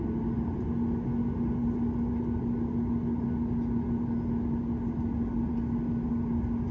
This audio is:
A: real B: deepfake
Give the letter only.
A